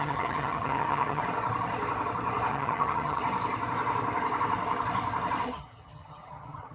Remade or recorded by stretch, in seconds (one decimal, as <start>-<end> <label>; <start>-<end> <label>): 0.0-1.2 remade; 1.2-2.5 recorded; 2.5-3.2 remade; 3.2-5.6 recorded; 5.6-6.7 remade